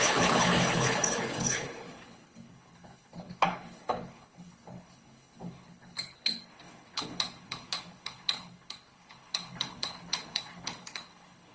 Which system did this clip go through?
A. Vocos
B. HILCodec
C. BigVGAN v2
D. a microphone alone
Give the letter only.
B